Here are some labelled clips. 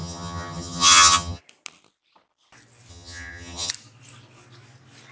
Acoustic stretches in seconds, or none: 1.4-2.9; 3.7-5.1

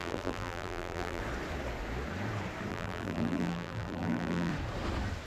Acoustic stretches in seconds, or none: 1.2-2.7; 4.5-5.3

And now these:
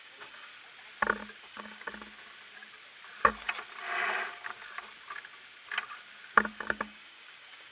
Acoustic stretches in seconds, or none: 0.5-1.4; 1.9-6.5

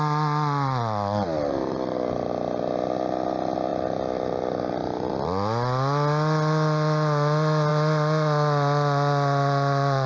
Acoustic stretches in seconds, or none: 0.0-10.1